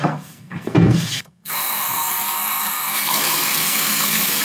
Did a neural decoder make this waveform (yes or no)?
yes